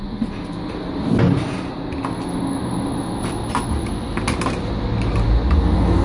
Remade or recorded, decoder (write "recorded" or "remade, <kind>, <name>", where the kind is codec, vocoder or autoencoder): recorded